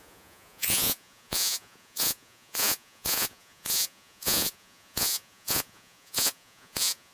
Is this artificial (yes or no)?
yes